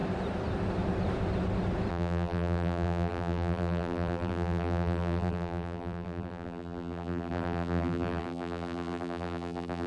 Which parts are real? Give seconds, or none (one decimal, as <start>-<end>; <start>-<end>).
0.0-1.9